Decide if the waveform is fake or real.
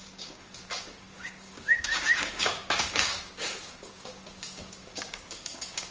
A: fake